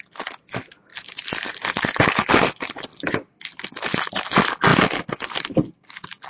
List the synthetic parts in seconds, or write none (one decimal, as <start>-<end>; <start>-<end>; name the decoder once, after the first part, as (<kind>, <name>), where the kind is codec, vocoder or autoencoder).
0.9-2.3 (vocoder, BigVGAN v2)